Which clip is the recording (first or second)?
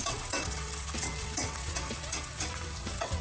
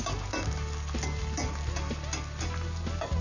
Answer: second